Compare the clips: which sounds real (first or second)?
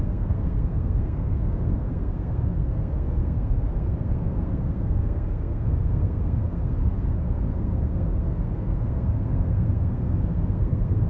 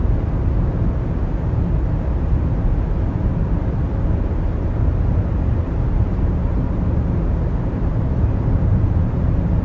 second